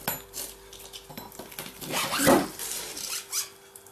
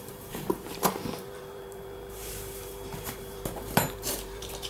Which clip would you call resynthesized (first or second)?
second